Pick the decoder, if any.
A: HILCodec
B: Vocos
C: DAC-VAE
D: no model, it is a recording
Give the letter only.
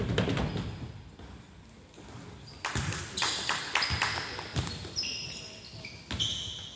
D